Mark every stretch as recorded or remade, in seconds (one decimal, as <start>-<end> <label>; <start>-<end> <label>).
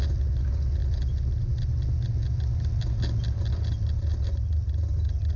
0.0-5.4 recorded